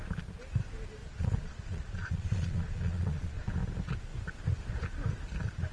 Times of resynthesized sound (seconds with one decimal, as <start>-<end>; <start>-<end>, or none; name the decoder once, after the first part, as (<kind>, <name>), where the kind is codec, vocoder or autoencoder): 1.0-3.5 (vocoder, Vocos)